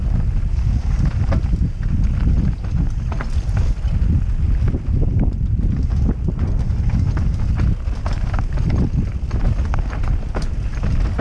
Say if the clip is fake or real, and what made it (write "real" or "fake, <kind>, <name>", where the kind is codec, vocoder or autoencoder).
real